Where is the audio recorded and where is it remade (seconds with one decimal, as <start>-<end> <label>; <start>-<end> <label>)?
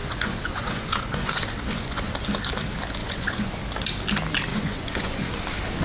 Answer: 0.0-2.1 remade; 2.1-3.0 recorded; 3.0-3.6 remade; 3.6-4.5 recorded; 4.5-5.3 remade; 5.3-5.8 recorded